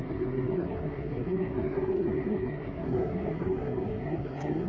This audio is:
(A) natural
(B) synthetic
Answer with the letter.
B